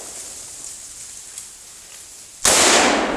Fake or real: real